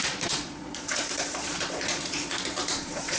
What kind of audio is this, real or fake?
fake